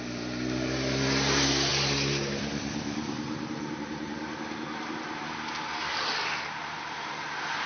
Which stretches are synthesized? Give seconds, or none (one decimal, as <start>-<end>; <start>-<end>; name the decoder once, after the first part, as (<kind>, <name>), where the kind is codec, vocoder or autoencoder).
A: none